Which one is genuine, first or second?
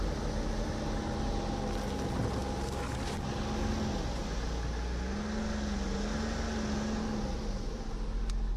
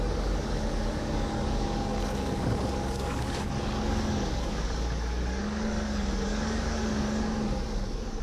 first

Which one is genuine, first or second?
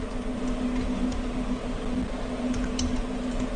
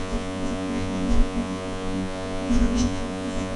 first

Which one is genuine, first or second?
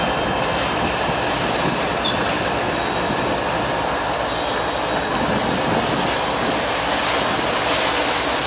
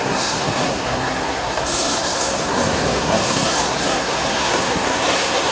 first